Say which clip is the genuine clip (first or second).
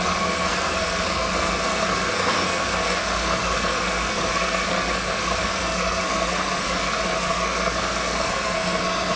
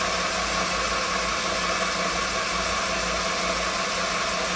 second